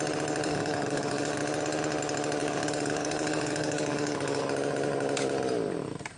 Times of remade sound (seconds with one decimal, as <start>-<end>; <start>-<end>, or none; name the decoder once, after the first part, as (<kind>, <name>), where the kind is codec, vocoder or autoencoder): 0.5-1.4 (codec, DAC); 2.4-4.4